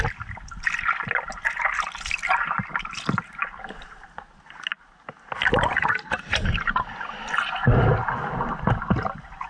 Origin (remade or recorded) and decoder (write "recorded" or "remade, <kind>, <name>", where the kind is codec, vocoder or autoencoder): recorded